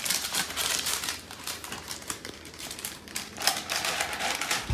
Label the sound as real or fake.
fake